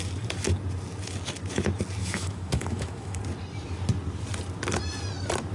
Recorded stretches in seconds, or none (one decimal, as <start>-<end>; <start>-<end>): 0.0-2.0; 3.2-5.5